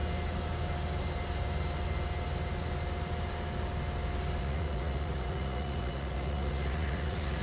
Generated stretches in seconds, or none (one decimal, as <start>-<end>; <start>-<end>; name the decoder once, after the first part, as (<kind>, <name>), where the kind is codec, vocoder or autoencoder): 4.4-7.4 (vocoder, Vocos)

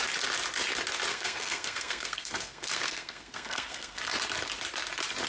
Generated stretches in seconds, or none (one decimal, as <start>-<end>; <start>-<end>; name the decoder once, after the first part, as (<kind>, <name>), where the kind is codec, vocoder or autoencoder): 1.1-4.0 (codec, SNAC)